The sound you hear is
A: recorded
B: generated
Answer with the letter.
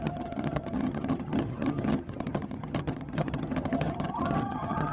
B